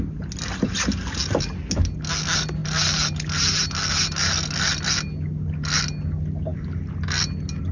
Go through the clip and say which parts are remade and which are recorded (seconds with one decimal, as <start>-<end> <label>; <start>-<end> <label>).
0.0-7.7 recorded